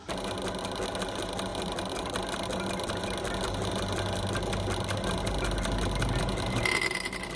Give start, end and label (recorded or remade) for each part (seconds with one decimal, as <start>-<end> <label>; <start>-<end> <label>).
0.0-7.4 recorded